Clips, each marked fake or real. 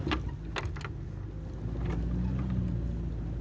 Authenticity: real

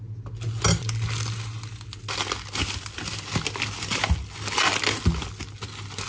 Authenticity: real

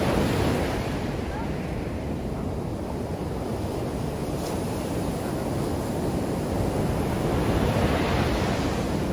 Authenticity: real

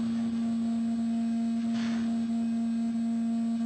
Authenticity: real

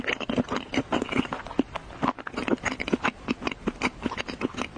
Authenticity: real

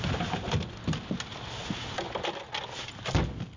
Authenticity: real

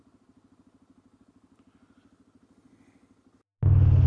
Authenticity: real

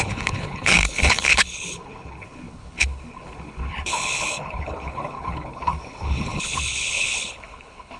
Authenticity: fake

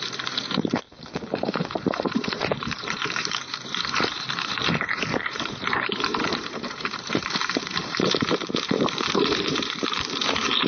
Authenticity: fake